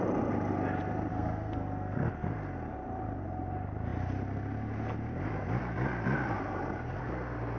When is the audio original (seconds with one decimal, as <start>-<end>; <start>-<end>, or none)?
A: 0.0-1.1; 2.1-7.6